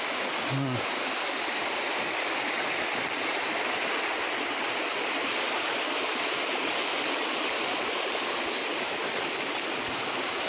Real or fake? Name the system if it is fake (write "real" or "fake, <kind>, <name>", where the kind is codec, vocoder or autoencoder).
real